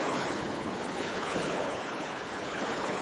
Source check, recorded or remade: remade